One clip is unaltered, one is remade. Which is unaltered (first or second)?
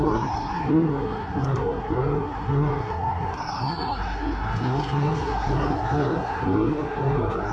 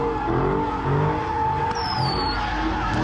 second